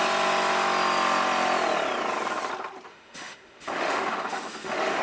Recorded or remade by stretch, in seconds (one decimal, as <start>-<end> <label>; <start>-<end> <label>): 0.0-2.9 recorded; 2.9-5.0 remade